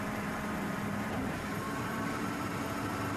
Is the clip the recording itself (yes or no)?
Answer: no